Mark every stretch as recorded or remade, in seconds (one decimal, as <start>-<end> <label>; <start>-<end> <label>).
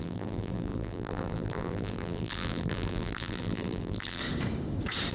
0.0-4.2 remade; 4.2-5.1 recorded